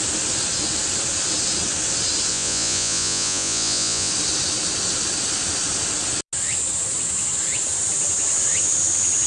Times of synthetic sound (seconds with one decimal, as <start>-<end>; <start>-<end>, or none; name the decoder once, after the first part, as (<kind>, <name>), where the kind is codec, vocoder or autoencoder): 2.3-4.1 (vocoder, Vocos)